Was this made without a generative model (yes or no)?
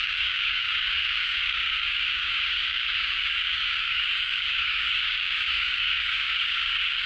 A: no